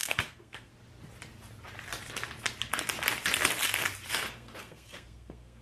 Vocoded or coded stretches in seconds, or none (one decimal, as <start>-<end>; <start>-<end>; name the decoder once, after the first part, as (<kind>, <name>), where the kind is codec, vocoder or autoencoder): 0.0-0.7 (codec, SNAC); 4.1-5.6